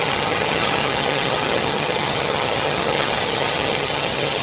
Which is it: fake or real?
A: fake